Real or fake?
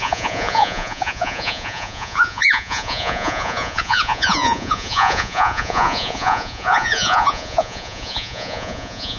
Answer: fake